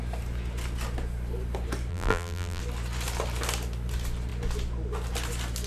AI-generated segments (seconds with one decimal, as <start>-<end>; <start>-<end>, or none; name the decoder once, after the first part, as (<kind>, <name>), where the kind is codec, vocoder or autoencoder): 1.9-2.6 (vocoder, BigVGAN v2)